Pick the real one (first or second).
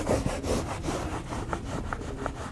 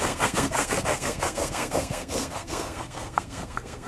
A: first